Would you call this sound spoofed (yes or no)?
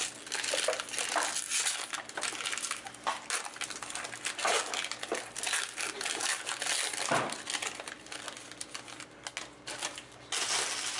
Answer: no